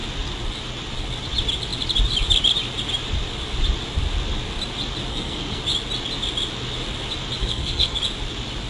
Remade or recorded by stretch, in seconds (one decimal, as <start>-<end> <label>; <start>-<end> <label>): 0.0-5.1 recorded; 5.1-5.6 remade; 5.6-7.4 recorded; 7.4-8.0 remade; 8.0-8.7 recorded